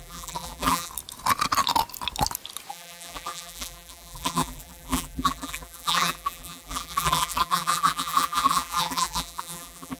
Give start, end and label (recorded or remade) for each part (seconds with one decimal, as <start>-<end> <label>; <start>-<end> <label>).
0.0-0.9 remade; 0.9-2.7 recorded; 2.7-10.0 remade